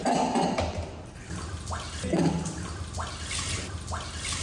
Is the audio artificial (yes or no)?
no